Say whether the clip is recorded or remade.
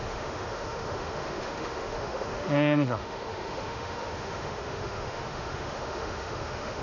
remade